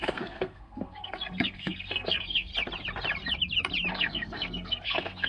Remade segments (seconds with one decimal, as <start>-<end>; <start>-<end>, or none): 0.0-2.5; 3.9-5.3